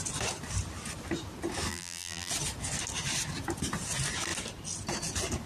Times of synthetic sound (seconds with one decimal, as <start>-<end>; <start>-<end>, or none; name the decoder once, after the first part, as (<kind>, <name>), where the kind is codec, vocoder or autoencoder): 1.7-2.3 (vocoder, BigVGAN v2)